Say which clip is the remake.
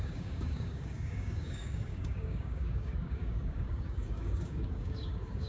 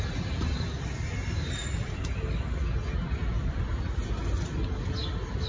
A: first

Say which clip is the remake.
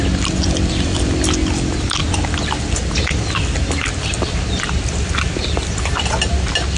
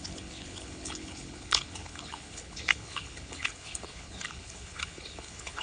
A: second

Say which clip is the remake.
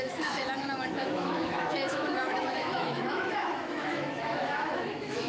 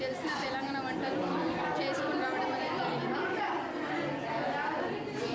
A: first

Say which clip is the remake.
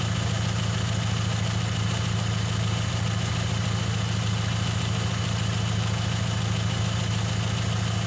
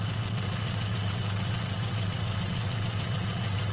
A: second